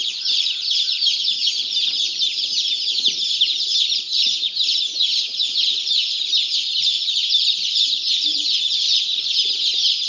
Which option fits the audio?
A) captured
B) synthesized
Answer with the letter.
B